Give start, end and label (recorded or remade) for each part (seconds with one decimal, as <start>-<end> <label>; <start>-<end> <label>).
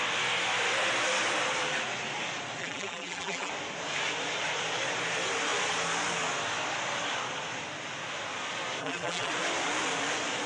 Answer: 0.0-2.6 recorded; 2.6-3.5 remade; 3.5-8.8 recorded; 8.8-9.3 remade; 9.3-10.5 recorded